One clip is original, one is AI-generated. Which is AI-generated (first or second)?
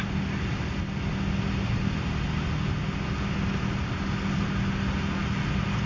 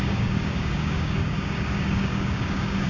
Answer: second